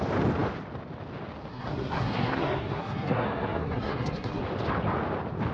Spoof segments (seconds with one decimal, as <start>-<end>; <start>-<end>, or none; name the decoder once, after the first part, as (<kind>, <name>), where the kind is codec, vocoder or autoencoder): 1.5-4.4 (codec, SNAC)

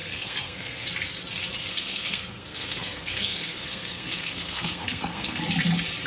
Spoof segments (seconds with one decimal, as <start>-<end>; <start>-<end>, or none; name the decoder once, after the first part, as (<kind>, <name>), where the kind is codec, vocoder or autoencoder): 0.0-0.9 (codec, SNAC); 1.7-5.4